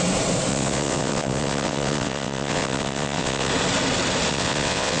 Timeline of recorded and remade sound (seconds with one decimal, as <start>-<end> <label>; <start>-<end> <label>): 0.0-0.5 recorded; 0.5-3.5 remade; 3.5-4.3 recorded; 4.3-5.0 remade